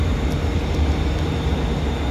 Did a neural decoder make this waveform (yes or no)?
no